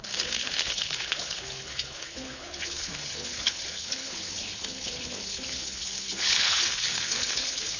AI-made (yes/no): yes